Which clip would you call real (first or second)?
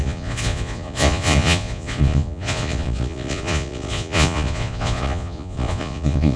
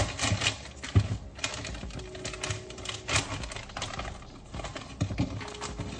second